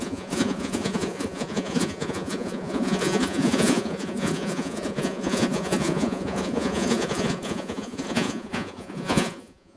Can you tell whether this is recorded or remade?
remade